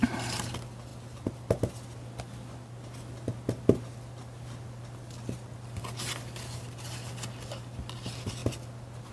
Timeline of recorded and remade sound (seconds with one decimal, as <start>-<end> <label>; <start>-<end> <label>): 0.0-0.9 recorded; 0.9-1.6 remade; 1.6-9.1 recorded